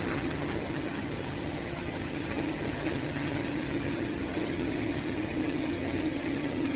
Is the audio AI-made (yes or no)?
yes